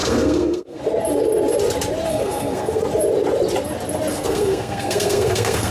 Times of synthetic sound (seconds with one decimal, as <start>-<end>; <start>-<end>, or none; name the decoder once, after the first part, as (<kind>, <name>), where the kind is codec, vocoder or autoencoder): 0.0-0.8 (codec, SNAC); 2.1-2.8; 4.1-5.7